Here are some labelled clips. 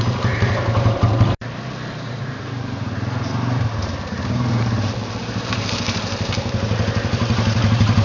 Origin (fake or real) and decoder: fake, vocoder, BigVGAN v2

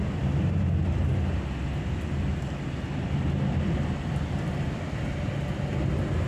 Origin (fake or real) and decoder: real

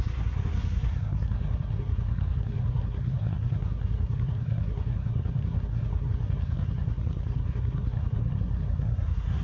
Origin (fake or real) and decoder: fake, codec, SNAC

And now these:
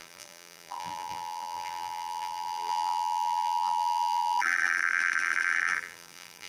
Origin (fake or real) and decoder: fake, vocoder, BigVGAN v2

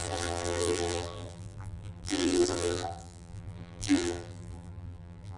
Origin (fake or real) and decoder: fake, vocoder, BigVGAN v2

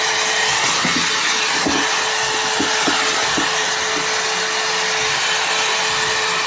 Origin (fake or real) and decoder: real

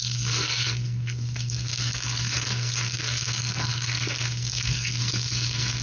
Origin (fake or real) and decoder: fake, codec, SNAC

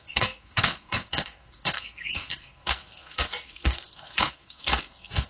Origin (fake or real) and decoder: fake, codec, SNAC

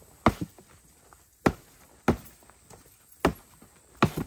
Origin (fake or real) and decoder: real